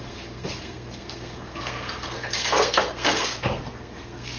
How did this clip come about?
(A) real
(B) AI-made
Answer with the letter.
B